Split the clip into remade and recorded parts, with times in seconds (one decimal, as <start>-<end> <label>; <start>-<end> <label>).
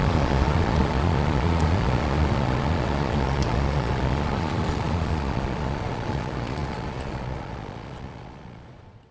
0.0-9.1 remade